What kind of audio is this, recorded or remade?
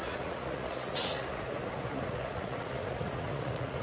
remade